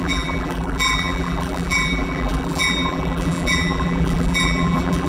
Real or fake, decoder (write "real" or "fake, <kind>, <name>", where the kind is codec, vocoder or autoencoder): fake, vocoder, BigVGAN v2